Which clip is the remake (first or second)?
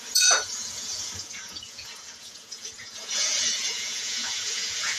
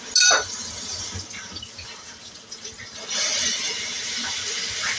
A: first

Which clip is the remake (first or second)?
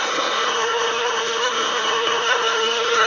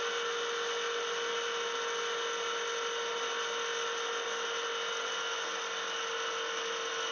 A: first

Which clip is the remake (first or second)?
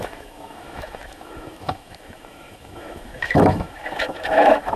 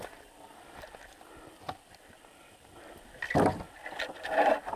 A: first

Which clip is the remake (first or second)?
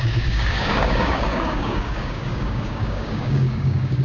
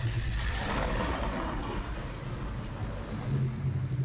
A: first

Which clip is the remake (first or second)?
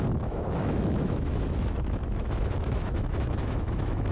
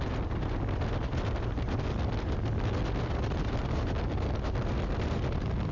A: first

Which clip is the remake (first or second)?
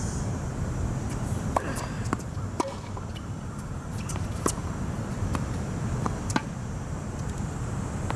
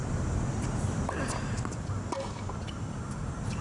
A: first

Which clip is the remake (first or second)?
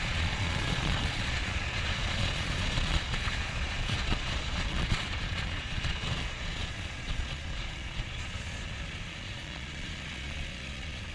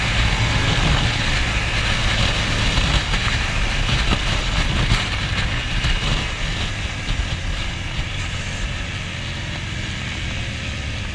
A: first